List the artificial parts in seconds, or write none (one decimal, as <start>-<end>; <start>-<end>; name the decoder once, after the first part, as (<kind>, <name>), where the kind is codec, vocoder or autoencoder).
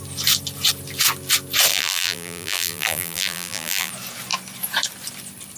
1.7-3.9 (vocoder, BigVGAN v2)